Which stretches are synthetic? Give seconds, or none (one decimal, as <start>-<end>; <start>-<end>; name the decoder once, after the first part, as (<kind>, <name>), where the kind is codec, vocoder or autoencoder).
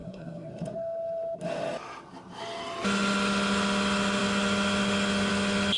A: 0.0-0.5 (codec, SNAC)